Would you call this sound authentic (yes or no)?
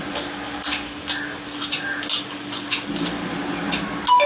yes